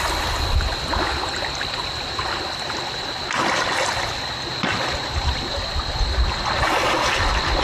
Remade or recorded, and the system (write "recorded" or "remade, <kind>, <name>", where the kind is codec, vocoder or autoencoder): recorded